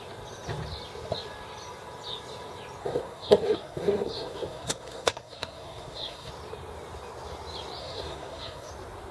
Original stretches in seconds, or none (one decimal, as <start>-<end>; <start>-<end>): 0.0-2.8; 6.3-7.8; 8.7-9.1